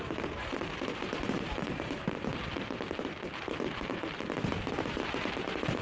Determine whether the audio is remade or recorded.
remade